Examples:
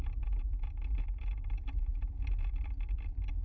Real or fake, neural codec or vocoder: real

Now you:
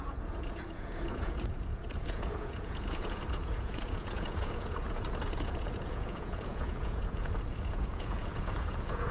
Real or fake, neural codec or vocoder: fake, vocoder, Vocos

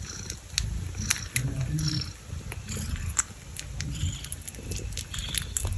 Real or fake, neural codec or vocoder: real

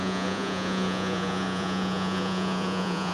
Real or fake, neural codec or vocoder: fake, vocoder, Vocos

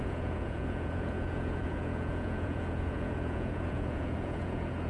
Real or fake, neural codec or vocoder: fake, vocoder, Vocos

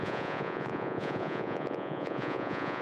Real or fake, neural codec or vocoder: fake, vocoder, Vocos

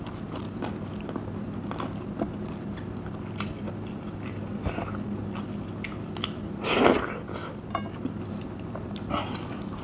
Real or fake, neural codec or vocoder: real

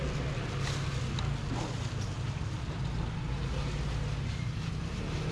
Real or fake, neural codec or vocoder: real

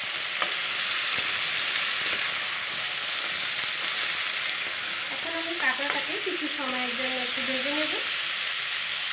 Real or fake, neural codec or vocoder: real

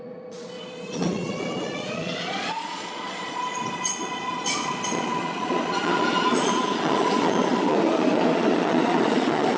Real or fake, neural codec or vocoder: fake, vocoder, Vocos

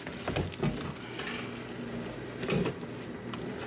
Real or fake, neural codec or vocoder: real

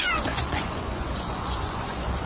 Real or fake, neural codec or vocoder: fake, vocoder, Vocos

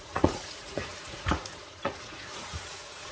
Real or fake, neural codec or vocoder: fake, vocoder, Vocos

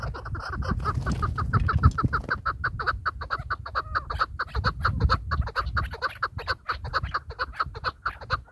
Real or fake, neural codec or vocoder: real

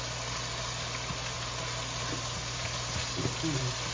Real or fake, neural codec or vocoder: real